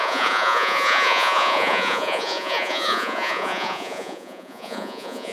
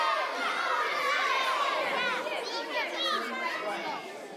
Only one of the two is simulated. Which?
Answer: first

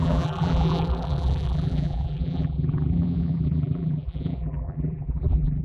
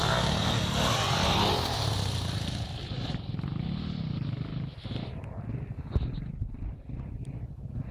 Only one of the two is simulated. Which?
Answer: first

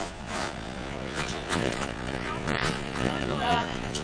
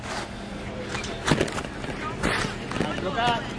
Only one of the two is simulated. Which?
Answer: first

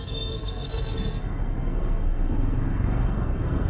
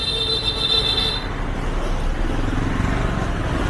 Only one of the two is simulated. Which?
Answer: first